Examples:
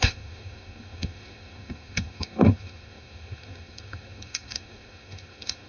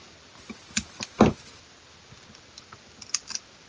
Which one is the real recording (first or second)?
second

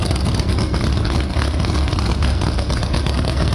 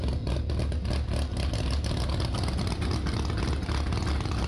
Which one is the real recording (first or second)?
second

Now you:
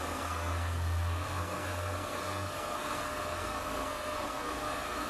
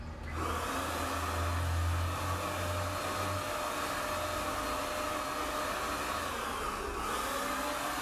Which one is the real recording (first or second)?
second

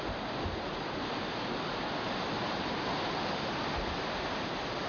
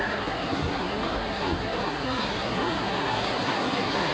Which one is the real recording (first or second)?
first